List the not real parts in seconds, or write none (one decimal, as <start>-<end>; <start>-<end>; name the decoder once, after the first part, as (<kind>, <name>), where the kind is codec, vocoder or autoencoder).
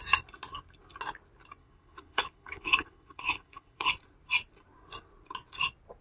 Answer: 1.6-3.9 (codec, HILCodec)